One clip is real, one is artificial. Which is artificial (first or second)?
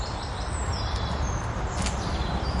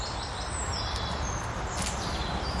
first